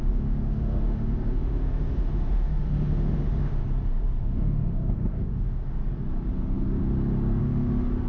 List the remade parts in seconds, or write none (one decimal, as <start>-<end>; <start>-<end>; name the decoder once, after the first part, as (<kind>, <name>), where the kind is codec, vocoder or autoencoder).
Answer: 0.0-3.6 (autoencoder, DAC-VAE); 4.2-5.8; 6.3-6.8; 7.4-8.1